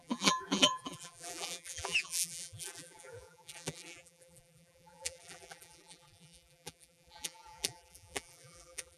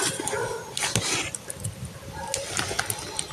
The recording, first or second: second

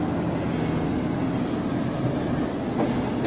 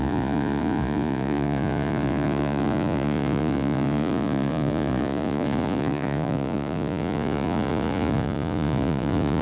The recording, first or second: first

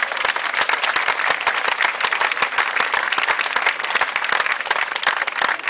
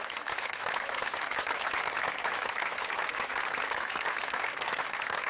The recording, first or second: first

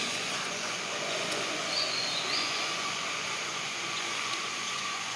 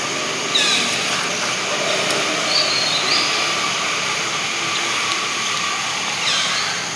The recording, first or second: second